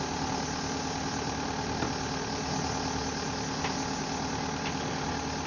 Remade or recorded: recorded